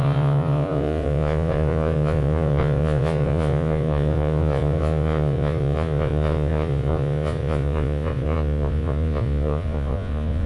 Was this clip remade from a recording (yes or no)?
yes